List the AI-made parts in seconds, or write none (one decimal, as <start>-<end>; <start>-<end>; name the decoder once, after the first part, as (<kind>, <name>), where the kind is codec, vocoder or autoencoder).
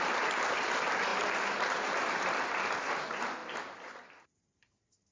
0.0-5.1 (vocoder, BigVGAN v2)